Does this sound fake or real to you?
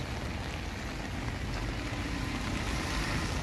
real